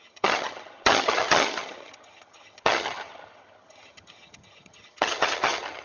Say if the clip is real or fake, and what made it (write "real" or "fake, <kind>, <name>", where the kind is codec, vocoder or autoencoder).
fake, vocoder, HiFi-GAN